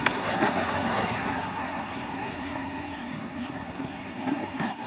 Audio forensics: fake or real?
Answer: fake